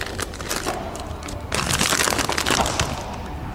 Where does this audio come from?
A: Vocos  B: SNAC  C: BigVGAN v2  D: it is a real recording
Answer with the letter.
D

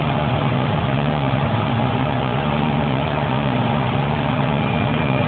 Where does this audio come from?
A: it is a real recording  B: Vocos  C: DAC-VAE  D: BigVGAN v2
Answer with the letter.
B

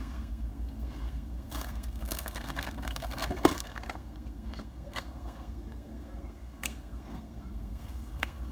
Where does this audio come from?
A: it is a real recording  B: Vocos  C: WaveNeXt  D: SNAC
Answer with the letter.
D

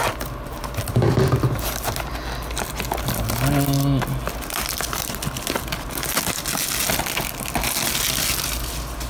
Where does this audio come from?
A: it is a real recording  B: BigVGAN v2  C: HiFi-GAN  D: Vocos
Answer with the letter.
A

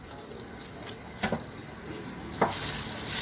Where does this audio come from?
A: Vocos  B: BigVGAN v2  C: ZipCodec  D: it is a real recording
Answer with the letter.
D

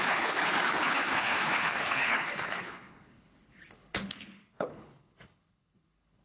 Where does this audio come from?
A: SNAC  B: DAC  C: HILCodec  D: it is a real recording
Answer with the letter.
C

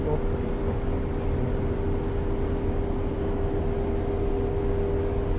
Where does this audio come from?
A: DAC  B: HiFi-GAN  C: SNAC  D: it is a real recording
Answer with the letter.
D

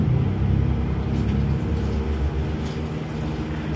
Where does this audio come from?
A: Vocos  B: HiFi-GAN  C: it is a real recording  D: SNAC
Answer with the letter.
C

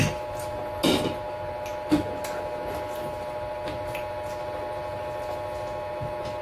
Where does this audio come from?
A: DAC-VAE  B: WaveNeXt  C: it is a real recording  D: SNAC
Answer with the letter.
C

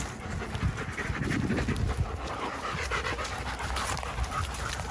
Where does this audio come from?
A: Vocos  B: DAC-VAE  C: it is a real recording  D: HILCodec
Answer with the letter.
C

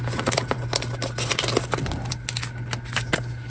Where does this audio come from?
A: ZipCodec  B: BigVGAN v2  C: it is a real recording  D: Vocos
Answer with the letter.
C